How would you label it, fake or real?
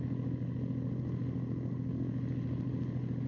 real